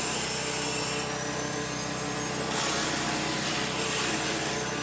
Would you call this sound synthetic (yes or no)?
no